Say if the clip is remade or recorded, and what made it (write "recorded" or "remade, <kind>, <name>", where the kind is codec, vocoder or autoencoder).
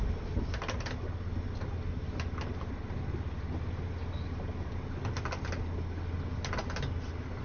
recorded